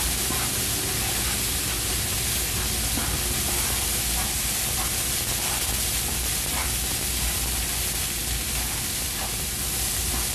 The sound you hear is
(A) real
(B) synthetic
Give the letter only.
A